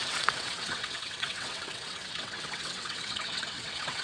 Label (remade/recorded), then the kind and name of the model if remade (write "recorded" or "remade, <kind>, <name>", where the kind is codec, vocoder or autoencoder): remade, vocoder, WaveNeXt